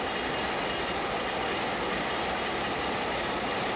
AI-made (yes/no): no